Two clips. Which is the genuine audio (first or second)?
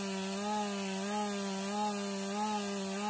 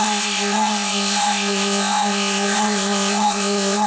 first